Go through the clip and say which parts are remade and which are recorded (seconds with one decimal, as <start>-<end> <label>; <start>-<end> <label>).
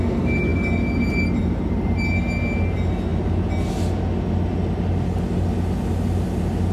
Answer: 0.0-6.7 recorded